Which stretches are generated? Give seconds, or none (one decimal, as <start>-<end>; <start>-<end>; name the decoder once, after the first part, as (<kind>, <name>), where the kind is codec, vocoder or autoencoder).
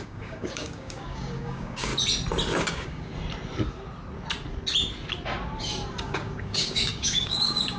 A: 0.0-1.9 (codec, DAC); 2.6-3.1; 6.0-7.8